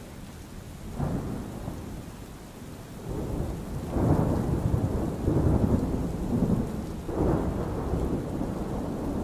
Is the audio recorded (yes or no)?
yes